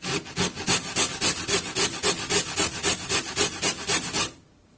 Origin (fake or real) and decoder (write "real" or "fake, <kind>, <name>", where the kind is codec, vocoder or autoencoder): real